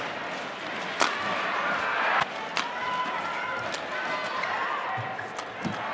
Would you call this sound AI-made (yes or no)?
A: no